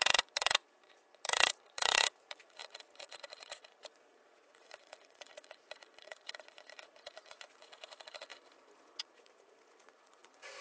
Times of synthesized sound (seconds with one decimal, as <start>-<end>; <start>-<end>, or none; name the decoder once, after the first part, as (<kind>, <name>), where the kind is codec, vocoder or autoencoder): 0.0-8.3 (vocoder, Vocos); 9.0-10.6